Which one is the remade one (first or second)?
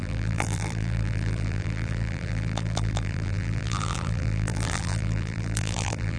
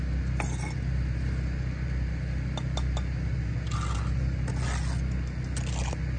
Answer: first